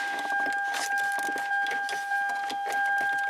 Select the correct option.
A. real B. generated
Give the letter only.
A